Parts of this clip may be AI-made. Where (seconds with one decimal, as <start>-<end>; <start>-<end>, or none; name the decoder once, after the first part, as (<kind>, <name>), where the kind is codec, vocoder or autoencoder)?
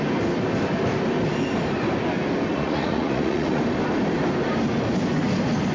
2.5-3.6 (vocoder, Vocos)